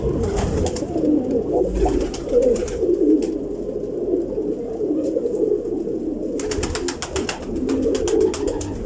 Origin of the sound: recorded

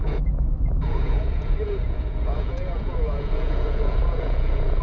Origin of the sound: remade